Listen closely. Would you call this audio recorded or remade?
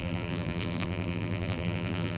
remade